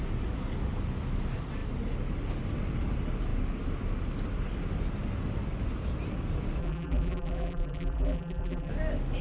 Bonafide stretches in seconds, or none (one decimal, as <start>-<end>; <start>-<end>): 0.0-6.6; 8.7-9.2